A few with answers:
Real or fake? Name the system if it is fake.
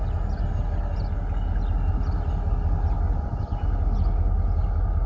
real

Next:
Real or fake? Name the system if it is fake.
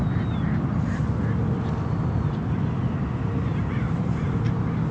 real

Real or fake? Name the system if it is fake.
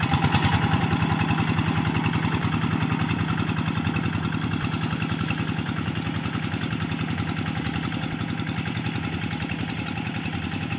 real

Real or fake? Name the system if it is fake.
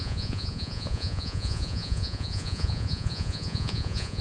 fake, vocoder, Vocos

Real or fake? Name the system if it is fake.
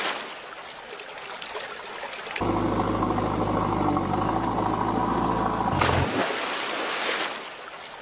real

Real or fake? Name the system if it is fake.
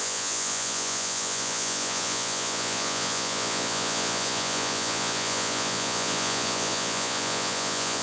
fake, vocoder, Vocos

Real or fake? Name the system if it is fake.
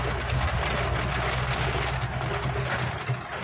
real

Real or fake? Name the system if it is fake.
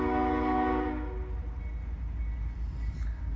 real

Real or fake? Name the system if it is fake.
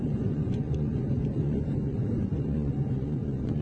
fake, vocoder, Vocos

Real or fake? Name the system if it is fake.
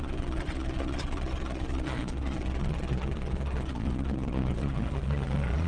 fake, vocoder, Vocos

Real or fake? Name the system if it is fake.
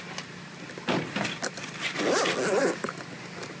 real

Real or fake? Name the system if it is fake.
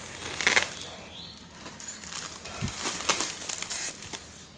real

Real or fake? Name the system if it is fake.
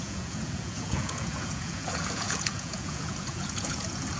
fake, vocoder, Vocos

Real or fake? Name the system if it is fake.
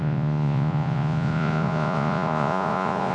fake, vocoder, Vocos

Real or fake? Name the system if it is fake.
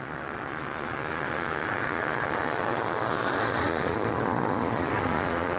fake, vocoder, Vocos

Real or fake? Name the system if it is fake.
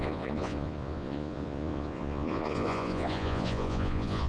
fake, vocoder, Vocos